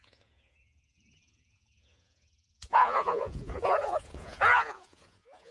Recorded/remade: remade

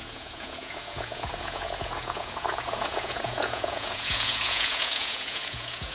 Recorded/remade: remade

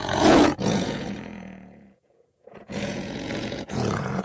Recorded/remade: remade